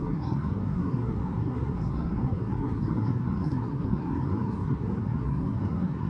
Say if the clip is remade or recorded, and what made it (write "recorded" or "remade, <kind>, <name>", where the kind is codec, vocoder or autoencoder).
remade, codec, SNAC